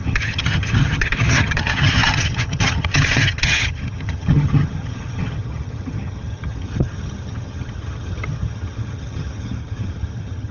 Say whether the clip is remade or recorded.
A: remade